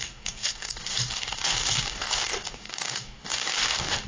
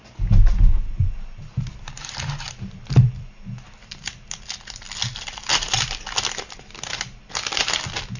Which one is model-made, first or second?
first